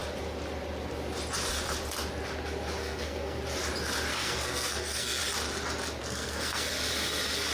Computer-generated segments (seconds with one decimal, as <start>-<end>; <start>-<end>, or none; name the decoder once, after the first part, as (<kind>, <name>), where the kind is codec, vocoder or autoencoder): 2.8-3.4 (codec, SNAC); 4.1-5.2; 6.0-6.7